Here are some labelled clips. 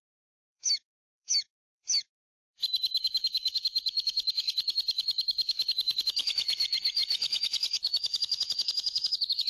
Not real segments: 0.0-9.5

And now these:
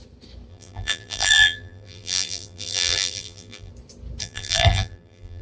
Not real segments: 0.5-3.7; 4.2-5.4

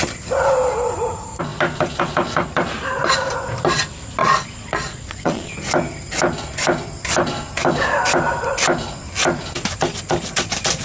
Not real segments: 4.2-5.5

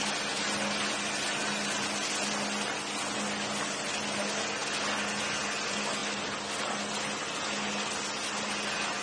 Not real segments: none

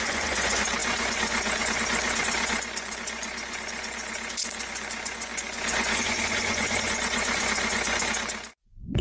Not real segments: 0.0-9.0

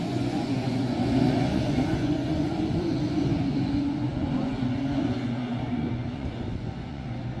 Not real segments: 0.0-7.4

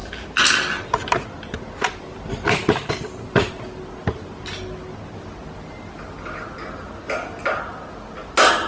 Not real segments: 0.0-3.5